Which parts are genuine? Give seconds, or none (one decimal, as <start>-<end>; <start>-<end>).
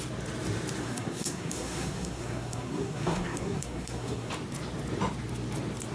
0.0-0.8; 4.3-5.9